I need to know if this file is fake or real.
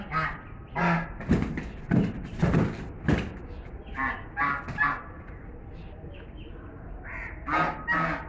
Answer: real